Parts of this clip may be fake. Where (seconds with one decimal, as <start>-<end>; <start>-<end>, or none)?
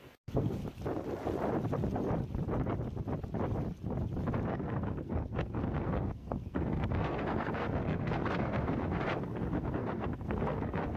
0.0-0.6; 4.5-11.0